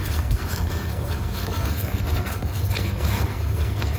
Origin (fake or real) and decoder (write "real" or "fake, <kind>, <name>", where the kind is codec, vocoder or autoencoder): fake, codec, SNAC